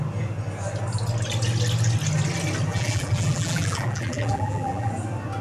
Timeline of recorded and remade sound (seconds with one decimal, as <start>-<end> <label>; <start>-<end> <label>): 0.0-2.7 recorded; 2.7-4.9 remade; 4.9-5.4 recorded

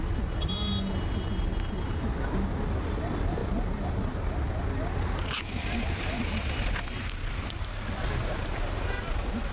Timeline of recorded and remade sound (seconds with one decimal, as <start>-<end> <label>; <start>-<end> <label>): 0.0-9.5 recorded

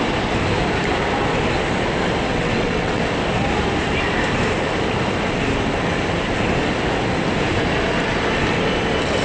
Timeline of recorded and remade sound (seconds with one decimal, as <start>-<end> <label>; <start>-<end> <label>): 0.0-2.3 recorded; 2.3-3.0 remade; 3.0-9.2 recorded

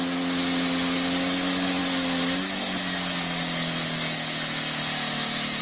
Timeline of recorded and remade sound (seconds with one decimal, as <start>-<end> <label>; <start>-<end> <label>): 0.0-5.6 recorded

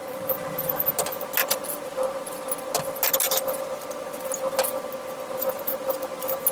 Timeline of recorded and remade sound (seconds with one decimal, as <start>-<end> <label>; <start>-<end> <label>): 0.0-0.9 remade; 0.9-6.5 recorded

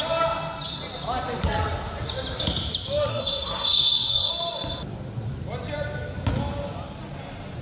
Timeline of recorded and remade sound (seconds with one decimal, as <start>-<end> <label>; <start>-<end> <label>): 0.0-3.1 recorded; 3.1-4.3 remade; 4.3-7.6 recorded

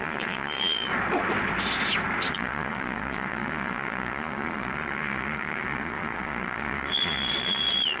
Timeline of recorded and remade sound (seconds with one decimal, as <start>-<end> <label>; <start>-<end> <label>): 0.0-0.9 remade; 0.9-2.3 recorded; 2.3-8.0 remade